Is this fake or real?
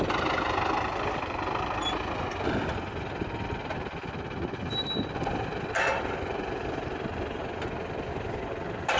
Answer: real